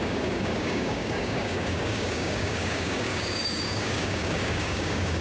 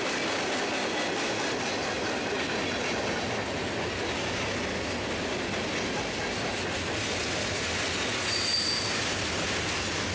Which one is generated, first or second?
first